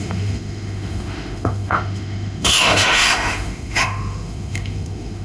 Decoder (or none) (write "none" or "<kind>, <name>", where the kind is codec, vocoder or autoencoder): autoencoder, DAC-VAE